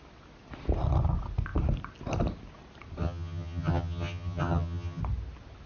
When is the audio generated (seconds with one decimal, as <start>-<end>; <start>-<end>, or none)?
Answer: 3.0-5.0